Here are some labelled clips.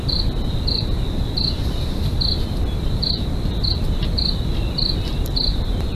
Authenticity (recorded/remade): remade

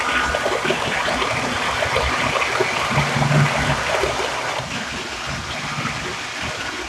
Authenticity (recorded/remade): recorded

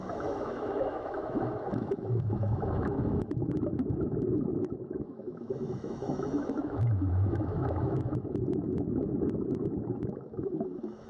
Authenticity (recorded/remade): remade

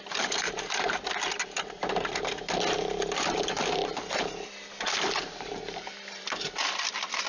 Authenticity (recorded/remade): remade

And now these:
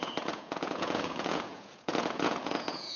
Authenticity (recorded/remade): remade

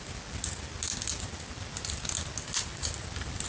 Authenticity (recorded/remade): recorded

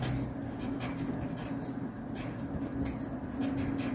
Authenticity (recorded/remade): recorded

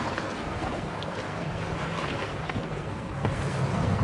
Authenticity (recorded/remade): remade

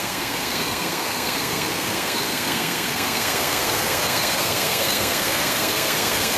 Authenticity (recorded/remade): remade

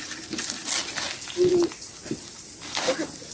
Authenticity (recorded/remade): recorded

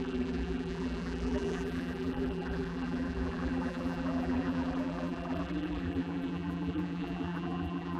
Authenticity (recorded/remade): remade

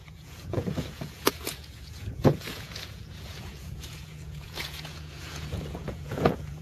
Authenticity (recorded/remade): remade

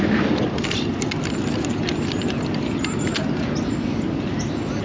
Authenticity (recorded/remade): recorded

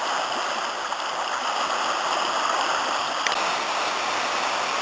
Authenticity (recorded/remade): recorded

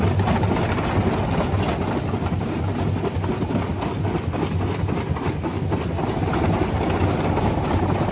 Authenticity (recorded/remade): recorded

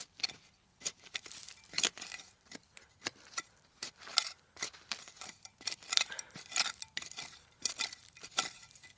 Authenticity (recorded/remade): remade